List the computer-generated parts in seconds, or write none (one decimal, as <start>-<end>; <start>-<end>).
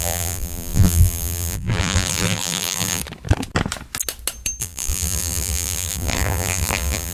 0.0-3.0; 4.6-7.1